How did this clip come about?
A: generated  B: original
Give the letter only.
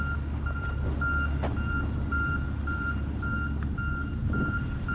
B